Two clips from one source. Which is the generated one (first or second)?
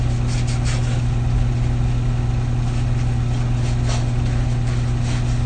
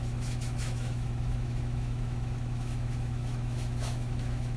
second